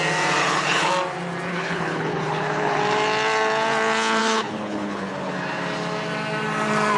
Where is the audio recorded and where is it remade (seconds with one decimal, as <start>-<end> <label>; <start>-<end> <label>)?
0.0-0.4 recorded; 0.4-0.9 remade; 0.9-1.5 recorded; 1.5-2.8 remade; 2.8-4.2 recorded; 4.2-5.3 remade; 5.3-7.0 recorded